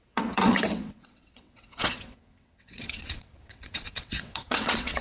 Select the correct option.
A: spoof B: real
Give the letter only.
A